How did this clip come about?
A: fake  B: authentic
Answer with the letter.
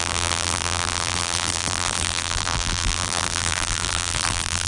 A